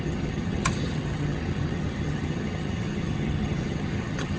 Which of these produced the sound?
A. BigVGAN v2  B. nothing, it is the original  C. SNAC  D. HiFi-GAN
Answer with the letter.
D